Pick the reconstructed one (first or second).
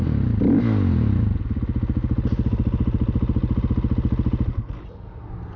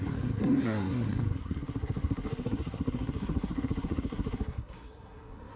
second